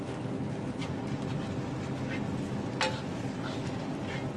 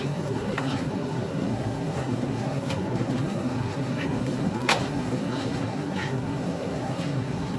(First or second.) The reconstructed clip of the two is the second